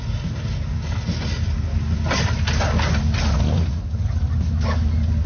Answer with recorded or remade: recorded